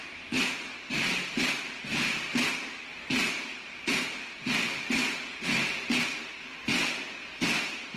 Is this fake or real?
real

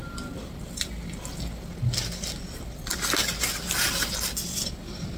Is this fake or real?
real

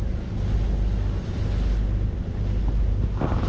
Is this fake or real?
real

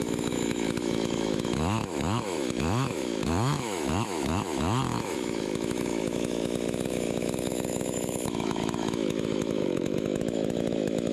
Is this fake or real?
fake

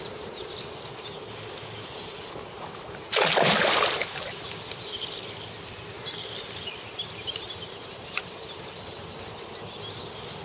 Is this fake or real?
real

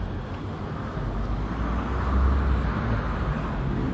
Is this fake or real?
real